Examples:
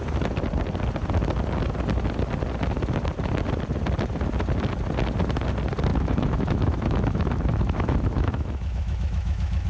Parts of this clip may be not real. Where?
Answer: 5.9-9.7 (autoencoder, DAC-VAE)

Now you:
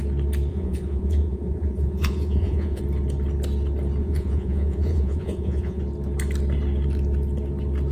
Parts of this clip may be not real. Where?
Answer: 0.5-2.8 (vocoder, Vocos); 4.0-5.8

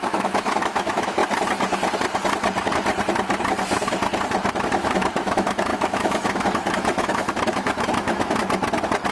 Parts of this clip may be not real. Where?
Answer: 0.0-1.2 (autoencoder, DAC-VAE); 4.7-8.4

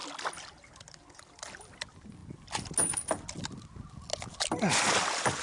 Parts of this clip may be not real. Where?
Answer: none

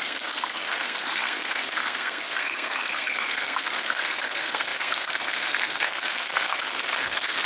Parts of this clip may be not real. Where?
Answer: 0.0-7.5 (codec, SNAC)

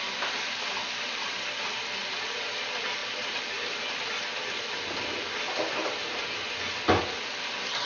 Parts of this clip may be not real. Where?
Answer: 3.0-4.1 (vocoder, BigVGAN v2)

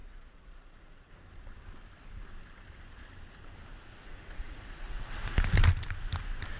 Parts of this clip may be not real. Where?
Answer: 0.0-1.1 (vocoder, Vocos); 3.7-5.1

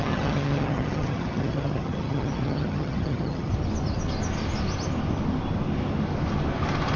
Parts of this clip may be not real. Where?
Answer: 0.0-3.5 (vocoder, HiFi-GAN)